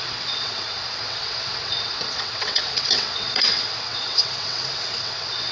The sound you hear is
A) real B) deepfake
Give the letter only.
B